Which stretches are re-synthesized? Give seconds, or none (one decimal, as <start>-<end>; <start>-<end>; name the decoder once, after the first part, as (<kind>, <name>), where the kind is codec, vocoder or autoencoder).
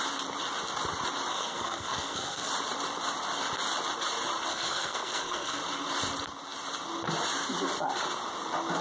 1.3-2.5 (codec, SNAC); 4.5-5.6